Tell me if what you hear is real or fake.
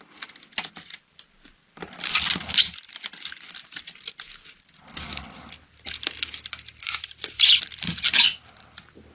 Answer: real